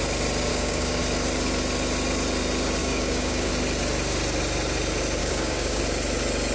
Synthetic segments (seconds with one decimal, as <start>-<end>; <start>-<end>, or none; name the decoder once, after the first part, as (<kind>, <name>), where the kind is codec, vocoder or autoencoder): 0.5-1.0 (codec, DAC); 2.8-3.5; 5.2-5.8